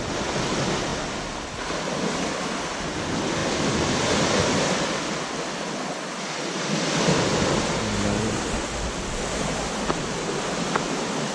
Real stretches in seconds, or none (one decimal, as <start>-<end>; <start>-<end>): 0.0-11.3